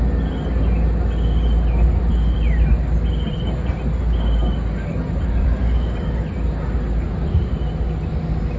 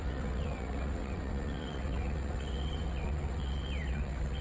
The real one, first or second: first